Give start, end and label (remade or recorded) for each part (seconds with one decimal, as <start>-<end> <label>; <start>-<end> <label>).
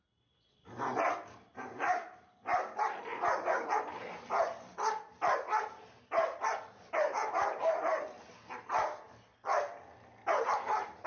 0.0-1.5 recorded; 1.5-2.3 remade; 2.3-3.1 recorded; 3.1-3.8 remade; 3.8-11.1 recorded